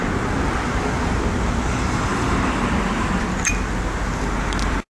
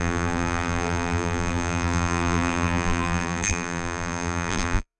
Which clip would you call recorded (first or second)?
first